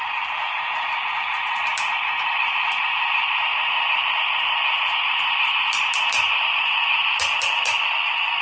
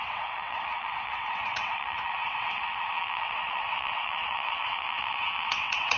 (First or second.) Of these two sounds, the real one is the first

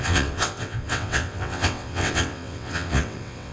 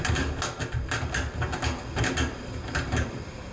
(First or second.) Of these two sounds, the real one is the second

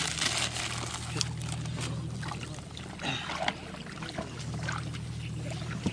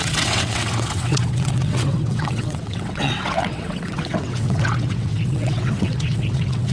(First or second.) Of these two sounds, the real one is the first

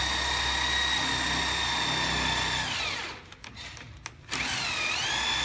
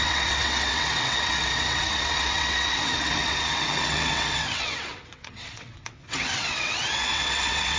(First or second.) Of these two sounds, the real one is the first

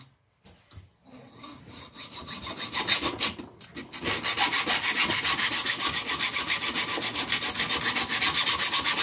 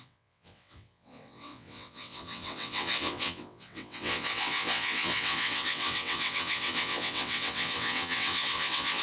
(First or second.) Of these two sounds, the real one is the first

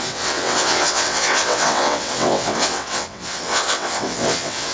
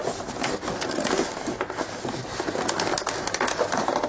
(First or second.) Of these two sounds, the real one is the second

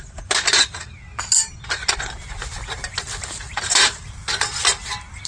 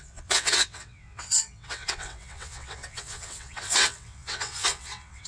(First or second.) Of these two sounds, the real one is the first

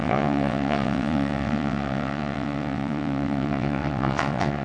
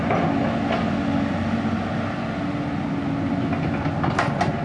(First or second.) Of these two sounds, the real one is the second